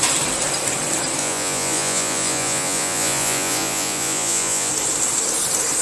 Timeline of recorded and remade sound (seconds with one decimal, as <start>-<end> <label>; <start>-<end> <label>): 0.0-1.2 recorded; 1.2-4.7 remade; 4.7-5.8 recorded

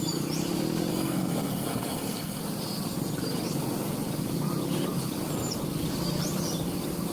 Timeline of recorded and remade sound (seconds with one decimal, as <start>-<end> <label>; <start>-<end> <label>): 0.0-0.9 recorded; 0.9-2.4 remade; 2.4-7.1 recorded